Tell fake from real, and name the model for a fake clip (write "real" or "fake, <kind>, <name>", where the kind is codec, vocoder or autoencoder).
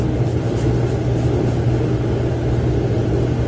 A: real